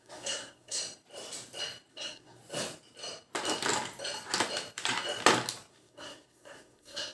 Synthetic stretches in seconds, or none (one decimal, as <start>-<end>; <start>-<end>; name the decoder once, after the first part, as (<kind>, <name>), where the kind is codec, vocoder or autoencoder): 0.0-0.8 (codec, SNAC); 1.9-2.4; 5.7-7.1